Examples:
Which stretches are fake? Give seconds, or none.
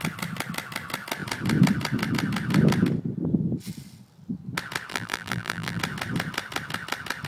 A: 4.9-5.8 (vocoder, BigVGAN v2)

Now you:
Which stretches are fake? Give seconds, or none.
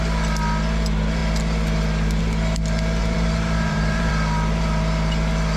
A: 3.0-4.1 (vocoder, BigVGAN v2)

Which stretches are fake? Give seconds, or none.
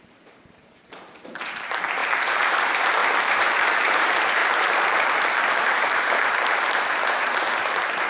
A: 0.0-8.1 (vocoder, BigVGAN v2)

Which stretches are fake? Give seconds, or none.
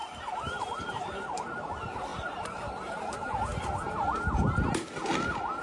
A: 0.0-1.7 (vocoder, BigVGAN v2); 2.1-3.6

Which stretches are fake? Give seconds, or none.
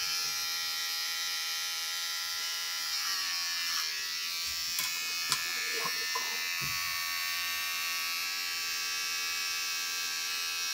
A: 0.0-3.3 (vocoder, BigVGAN v2); 3.9-10.7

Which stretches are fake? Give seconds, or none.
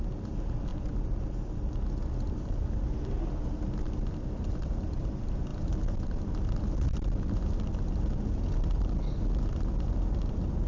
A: none